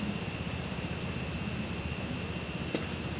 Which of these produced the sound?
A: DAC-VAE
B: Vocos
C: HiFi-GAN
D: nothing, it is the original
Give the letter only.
D